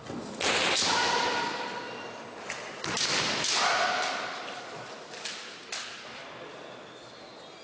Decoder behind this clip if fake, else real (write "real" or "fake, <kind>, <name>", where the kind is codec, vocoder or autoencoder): real